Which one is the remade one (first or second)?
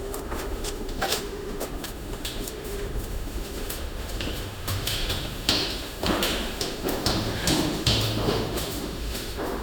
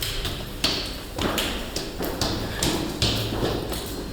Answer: first